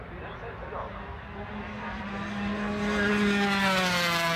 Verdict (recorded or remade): recorded